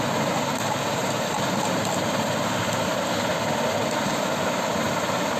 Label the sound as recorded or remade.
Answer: recorded